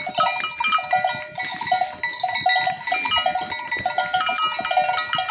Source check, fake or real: real